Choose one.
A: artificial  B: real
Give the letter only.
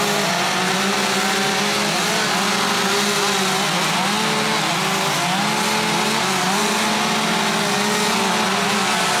B